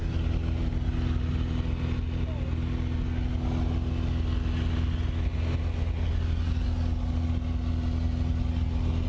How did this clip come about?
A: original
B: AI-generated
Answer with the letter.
A